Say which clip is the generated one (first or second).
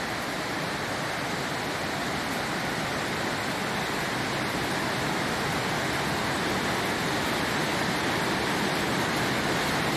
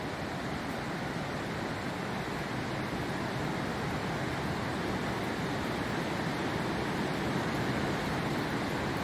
second